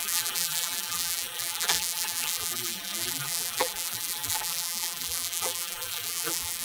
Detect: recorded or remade remade